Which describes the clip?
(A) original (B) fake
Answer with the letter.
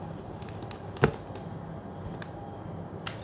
A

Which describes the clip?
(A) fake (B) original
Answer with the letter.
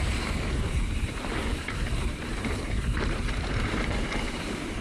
A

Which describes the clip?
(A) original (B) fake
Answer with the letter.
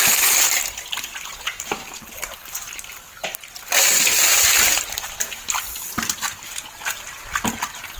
B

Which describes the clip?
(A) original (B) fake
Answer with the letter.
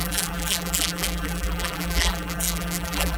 B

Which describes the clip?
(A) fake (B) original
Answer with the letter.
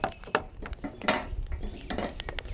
B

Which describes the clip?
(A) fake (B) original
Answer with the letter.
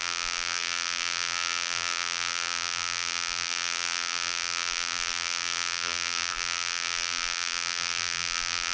A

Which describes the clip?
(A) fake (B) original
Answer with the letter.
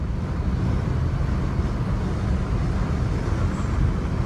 B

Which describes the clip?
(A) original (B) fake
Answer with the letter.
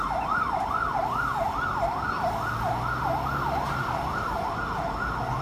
A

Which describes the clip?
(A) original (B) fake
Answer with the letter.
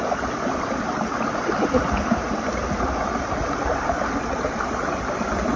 A